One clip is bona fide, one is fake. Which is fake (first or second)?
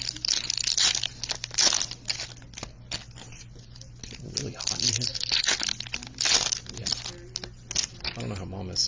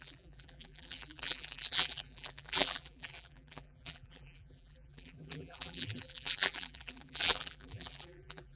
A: second